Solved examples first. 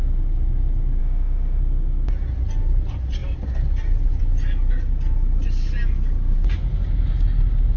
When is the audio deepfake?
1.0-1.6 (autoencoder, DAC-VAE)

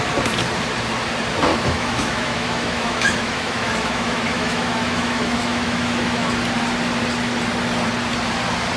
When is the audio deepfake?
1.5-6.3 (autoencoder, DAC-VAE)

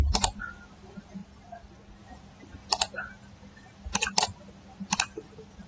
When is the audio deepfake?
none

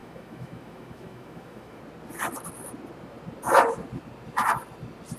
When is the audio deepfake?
0.0-1.8 (autoencoder, DAC-VAE)